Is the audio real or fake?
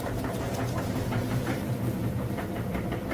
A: fake